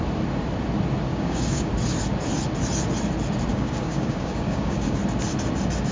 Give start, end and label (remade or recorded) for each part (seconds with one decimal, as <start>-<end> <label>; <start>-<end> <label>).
0.0-1.1 recorded; 1.1-1.7 remade; 1.7-3.5 recorded; 3.5-5.0 remade; 5.0-5.9 recorded